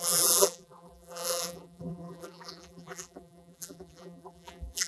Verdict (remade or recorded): remade